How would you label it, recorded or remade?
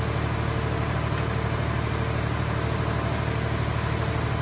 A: recorded